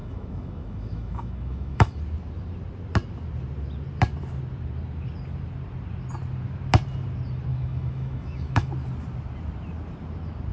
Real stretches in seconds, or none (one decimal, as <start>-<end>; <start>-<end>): 2.0-7.5; 8.7-10.5